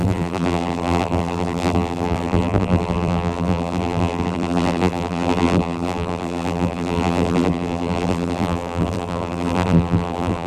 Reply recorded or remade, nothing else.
remade